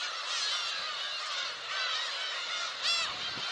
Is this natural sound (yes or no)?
yes